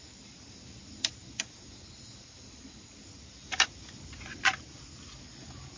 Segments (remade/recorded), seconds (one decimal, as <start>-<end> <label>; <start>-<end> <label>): 0.0-5.8 recorded